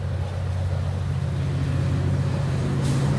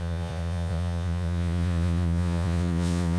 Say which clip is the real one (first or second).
first